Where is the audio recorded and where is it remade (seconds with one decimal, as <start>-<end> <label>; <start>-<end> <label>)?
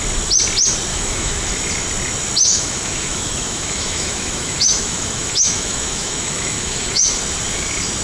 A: 0.0-0.9 recorded; 0.9-1.5 remade; 1.5-2.5 recorded; 2.5-7.2 remade; 7.2-8.0 recorded